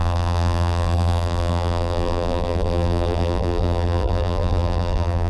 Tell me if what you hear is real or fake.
fake